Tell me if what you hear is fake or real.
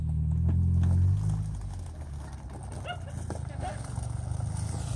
real